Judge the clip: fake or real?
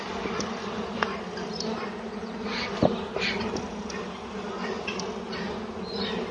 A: real